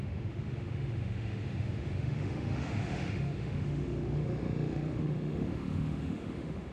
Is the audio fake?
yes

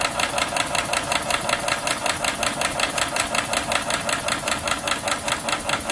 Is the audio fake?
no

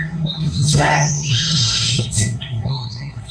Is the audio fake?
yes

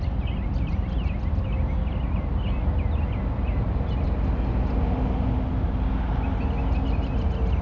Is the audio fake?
no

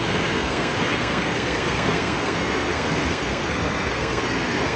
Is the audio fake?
yes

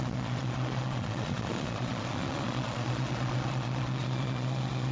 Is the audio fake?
yes